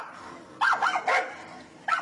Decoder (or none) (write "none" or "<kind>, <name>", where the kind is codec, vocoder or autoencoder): none